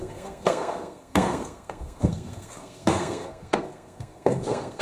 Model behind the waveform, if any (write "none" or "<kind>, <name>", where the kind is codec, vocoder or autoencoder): codec, SNAC